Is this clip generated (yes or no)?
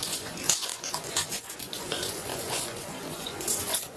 yes